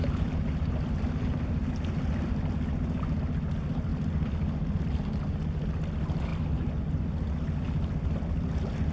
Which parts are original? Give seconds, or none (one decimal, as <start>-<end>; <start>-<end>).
0.0-8.9